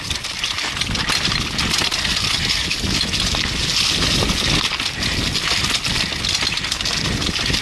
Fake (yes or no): no